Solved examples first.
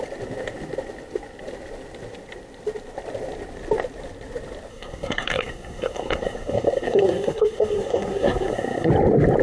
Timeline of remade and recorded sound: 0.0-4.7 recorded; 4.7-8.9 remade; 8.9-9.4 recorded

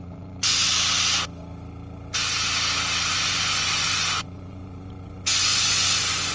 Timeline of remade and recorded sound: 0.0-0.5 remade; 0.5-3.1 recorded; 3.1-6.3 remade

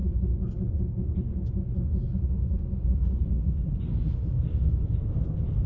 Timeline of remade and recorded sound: 0.0-5.7 recorded

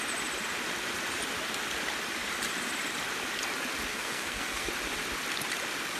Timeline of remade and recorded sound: 0.0-3.9 recorded; 3.9-4.7 remade; 4.7-6.0 recorded